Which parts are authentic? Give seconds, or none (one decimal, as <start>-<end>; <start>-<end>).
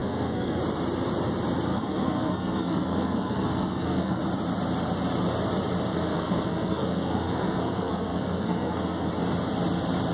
0.6-1.7; 4.2-5.9; 9.1-10.1